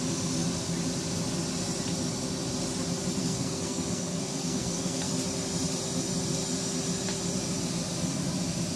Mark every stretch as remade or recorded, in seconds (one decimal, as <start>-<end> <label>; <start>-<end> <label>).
0.0-3.2 recorded; 3.2-5.1 remade; 5.1-8.8 recorded